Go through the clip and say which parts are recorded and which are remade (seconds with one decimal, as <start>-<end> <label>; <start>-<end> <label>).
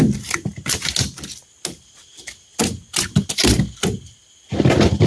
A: 0.0-5.1 recorded